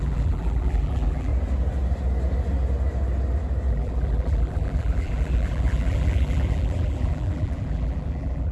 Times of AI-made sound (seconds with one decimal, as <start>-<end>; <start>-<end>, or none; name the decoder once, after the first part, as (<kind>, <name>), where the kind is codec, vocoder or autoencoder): 0.0-1.3 (vocoder, BigVGAN v2); 3.7-8.5